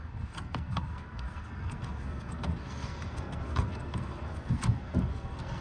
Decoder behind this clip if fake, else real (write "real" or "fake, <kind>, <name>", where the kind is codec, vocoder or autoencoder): fake, codec, SNAC